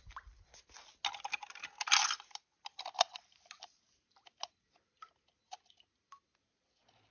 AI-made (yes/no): no